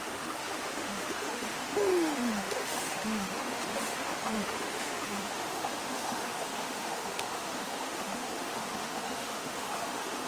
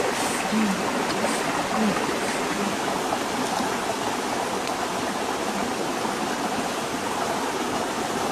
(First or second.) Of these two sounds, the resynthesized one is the first